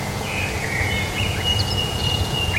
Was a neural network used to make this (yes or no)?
yes